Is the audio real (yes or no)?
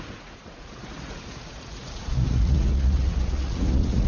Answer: no